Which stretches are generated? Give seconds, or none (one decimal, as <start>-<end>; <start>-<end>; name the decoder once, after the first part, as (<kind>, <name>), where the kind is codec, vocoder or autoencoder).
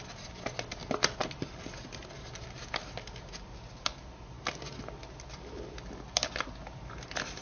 none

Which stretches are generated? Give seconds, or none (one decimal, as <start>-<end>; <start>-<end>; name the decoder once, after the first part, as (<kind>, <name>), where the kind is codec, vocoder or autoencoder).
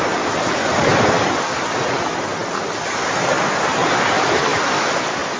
none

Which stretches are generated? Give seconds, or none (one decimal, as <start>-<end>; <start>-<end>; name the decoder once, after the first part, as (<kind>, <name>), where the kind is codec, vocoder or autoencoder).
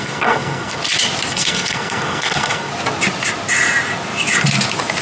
0.0-0.8 (codec, SNAC); 1.3-2.7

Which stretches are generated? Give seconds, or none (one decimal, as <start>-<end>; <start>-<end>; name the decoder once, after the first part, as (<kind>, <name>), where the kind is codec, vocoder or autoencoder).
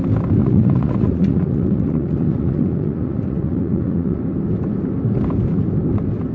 0.4-4.2 (vocoder, Vocos)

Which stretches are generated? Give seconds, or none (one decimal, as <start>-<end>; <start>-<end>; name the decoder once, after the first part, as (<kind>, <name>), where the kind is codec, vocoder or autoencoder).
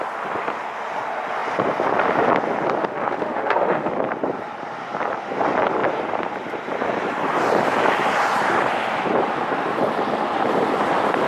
2.8-3.9 (autoencoder, DAC-VAE)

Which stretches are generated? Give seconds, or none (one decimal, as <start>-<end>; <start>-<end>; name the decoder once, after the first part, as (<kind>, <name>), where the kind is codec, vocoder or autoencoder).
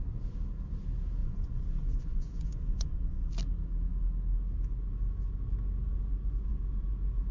1.2-3.3 (vocoder, Vocos)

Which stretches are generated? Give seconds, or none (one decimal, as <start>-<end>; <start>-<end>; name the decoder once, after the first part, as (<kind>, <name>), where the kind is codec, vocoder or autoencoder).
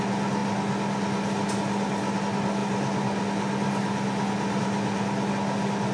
2.6-5.3 (vocoder, BigVGAN v2)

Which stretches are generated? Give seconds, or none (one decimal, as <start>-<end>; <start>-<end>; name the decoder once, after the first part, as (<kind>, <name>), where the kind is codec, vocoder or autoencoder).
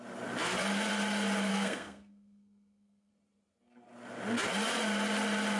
1.5-3.1 (codec, SNAC)